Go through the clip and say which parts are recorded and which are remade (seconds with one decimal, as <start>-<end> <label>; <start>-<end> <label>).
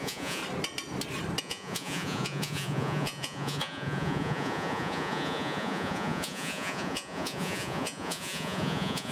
0.0-0.4 remade; 0.4-1.4 recorded; 1.4-9.1 remade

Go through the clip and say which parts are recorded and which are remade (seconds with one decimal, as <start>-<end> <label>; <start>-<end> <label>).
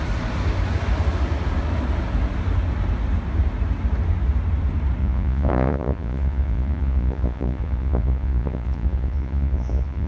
0.0-5.0 recorded; 5.0-10.1 remade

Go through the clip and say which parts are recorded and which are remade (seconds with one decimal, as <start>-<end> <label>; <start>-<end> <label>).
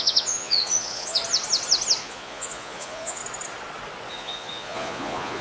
0.0-1.2 remade; 1.2-2.0 recorded; 2.0-3.2 remade; 3.2-4.1 recorded; 4.1-5.4 remade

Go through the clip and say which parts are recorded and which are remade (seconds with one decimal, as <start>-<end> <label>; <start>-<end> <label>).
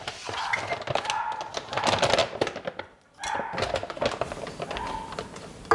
0.0-5.7 recorded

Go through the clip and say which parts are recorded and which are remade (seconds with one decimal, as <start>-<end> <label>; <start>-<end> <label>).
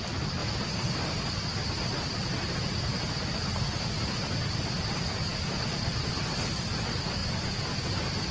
0.0-7.2 recorded; 7.2-7.8 remade; 7.8-8.3 recorded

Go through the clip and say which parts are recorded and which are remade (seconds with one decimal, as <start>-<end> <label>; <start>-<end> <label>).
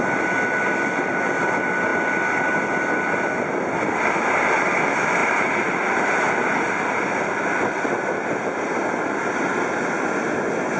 0.0-10.8 recorded